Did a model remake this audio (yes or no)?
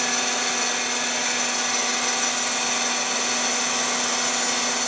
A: no